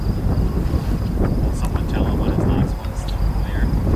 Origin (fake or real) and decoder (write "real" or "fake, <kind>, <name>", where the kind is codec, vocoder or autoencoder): fake, vocoder, BigVGAN v2